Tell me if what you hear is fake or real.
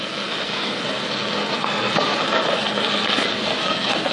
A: fake